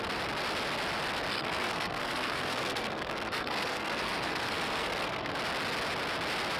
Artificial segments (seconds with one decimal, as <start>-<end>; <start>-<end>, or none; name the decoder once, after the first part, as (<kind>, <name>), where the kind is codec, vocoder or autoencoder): 1.3-5.3 (codec, SNAC)